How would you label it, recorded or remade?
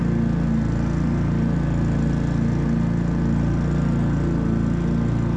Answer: recorded